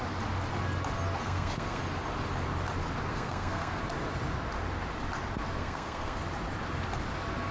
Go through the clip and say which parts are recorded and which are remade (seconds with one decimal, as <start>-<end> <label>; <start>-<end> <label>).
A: 0.0-1.2 recorded; 1.2-1.8 remade; 1.8-3.1 recorded; 3.1-3.8 remade; 3.8-5.6 recorded; 5.6-6.2 remade; 6.2-7.5 recorded